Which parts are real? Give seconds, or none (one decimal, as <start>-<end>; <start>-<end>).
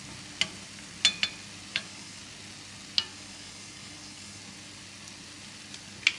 0.0-1.7; 2.2-3.1; 4.4-6.2